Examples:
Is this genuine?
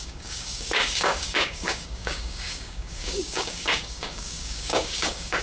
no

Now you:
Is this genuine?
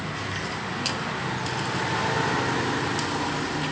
yes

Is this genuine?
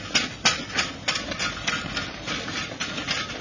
yes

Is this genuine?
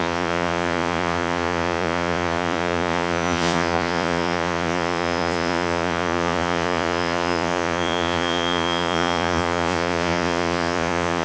no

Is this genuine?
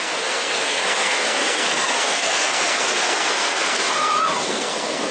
no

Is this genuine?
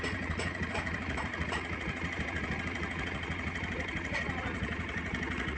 no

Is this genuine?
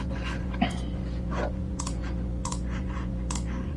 no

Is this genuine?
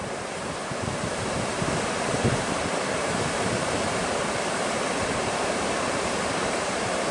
no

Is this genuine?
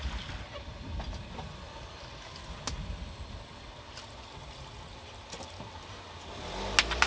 yes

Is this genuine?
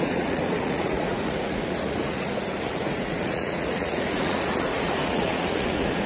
no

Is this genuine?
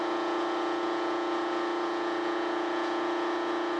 no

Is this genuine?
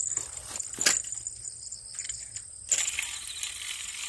yes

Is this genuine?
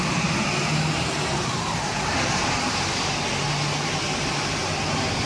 yes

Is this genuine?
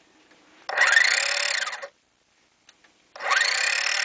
yes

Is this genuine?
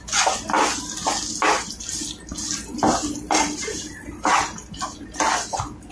yes